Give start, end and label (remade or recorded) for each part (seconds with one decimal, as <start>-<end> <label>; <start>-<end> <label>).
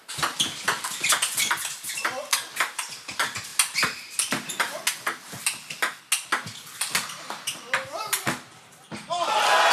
0.0-9.7 recorded